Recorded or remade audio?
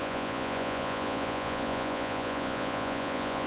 remade